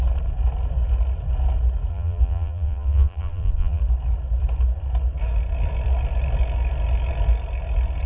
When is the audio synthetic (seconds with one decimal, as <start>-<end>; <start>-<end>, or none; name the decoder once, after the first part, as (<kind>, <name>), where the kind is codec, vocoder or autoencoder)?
1.9-3.8 (vocoder, BigVGAN v2)